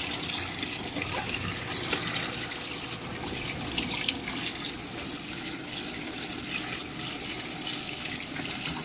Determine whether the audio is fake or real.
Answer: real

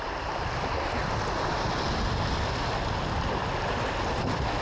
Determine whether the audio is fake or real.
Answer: real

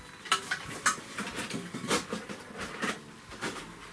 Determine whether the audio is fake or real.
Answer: real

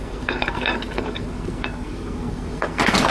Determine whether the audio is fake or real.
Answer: fake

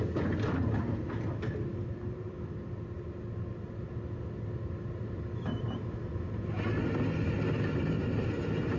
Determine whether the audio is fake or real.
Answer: real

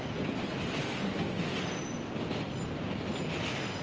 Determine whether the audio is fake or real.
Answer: real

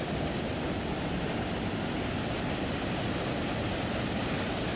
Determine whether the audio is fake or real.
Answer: real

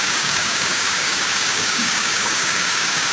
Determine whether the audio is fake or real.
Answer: fake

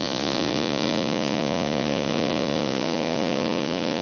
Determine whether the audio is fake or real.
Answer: fake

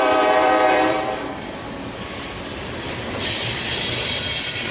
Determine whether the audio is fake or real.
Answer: fake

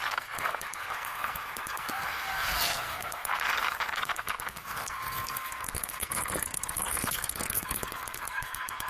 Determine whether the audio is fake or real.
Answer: fake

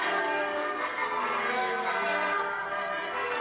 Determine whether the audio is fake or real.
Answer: fake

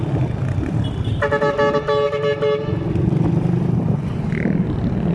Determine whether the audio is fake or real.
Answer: real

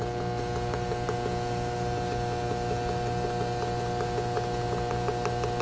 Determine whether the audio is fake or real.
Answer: real